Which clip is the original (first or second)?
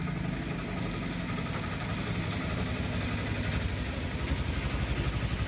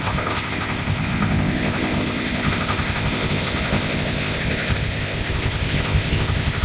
first